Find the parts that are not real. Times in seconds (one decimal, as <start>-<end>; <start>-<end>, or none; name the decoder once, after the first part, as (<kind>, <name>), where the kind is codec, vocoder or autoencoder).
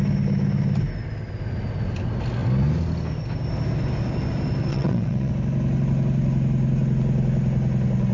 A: 4.7-5.3 (vocoder, WaveNeXt)